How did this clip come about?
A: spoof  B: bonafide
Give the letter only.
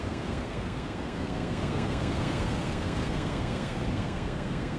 A